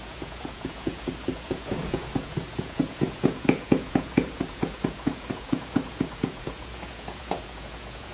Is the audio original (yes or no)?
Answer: no